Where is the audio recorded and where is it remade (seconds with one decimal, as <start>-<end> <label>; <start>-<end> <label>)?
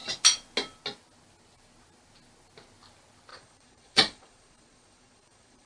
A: 0.0-3.3 recorded; 3.3-5.7 remade